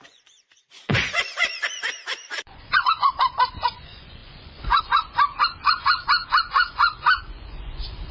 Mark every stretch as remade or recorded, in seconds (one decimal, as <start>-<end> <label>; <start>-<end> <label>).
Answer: 0.0-8.1 remade